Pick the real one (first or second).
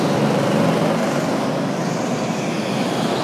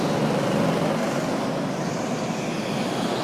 first